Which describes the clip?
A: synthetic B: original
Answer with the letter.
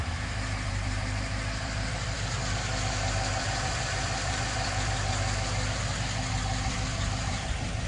A